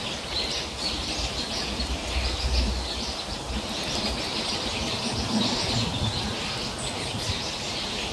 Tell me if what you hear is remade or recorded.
recorded